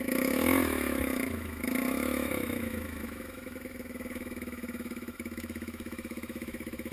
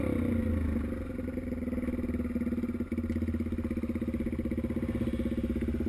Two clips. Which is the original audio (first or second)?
second